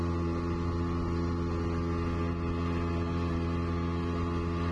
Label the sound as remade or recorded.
recorded